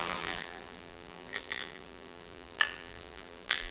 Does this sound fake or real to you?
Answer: fake